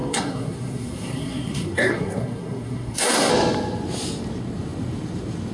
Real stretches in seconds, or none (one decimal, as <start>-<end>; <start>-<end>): 3.3-5.5